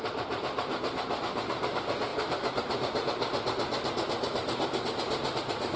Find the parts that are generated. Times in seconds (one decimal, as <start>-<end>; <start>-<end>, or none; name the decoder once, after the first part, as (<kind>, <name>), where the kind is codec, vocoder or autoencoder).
0.0-2.1 (vocoder, BigVGAN v2)